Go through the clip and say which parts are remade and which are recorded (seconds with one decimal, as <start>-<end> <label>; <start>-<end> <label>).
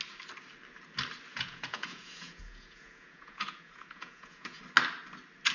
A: 0.0-1.3 recorded; 1.3-4.6 remade; 4.6-5.5 recorded